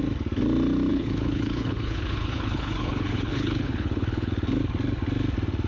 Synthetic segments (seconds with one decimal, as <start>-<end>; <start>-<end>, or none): 0.9-4.3